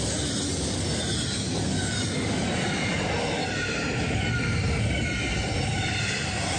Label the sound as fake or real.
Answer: real